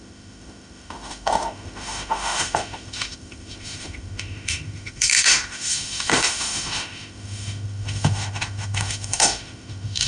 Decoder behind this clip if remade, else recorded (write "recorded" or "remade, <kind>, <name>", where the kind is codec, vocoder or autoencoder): remade, autoencoder, DAC-VAE